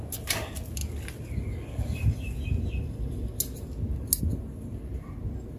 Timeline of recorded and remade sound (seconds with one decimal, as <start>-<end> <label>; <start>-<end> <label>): 0.0-5.6 recorded